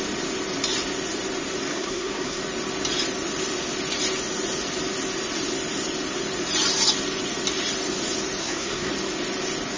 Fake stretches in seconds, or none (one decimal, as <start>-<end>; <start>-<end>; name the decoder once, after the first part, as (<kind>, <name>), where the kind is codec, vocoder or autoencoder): 1.7-2.4 (codec, SNAC); 8.4-8.9